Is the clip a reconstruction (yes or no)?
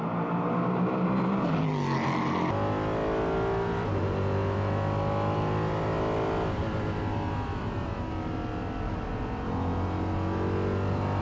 no